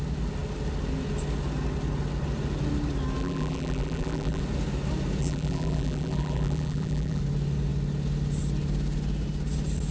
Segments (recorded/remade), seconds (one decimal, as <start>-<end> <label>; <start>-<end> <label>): 0.0-3.2 recorded; 3.2-4.4 remade; 4.4-5.2 recorded; 5.2-7.2 remade; 7.2-9.9 recorded